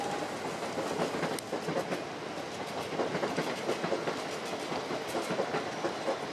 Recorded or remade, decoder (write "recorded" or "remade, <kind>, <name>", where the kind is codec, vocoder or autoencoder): recorded